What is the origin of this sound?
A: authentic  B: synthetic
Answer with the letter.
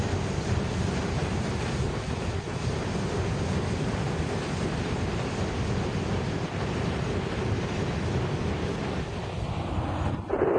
A